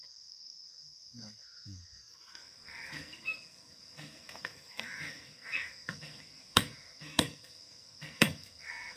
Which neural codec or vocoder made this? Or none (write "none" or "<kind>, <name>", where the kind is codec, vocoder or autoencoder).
codec, SNAC